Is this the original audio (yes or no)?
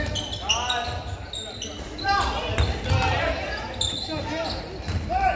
yes